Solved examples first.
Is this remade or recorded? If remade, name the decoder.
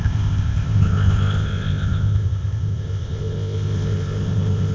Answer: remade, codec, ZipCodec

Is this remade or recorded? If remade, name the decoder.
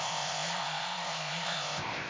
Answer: remade, codec, ZipCodec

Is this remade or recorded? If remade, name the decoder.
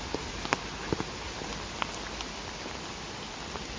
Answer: recorded